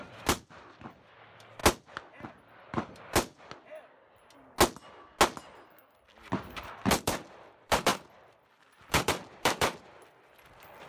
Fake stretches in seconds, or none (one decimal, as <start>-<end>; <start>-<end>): 0.0-1.6; 2.5-3.3; 6.8-10.9